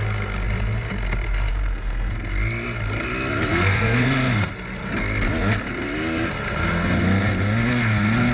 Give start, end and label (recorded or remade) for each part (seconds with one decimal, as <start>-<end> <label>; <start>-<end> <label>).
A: 0.0-1.5 recorded; 1.5-2.1 remade; 2.1-3.5 recorded; 3.5-4.5 remade; 4.5-8.3 recorded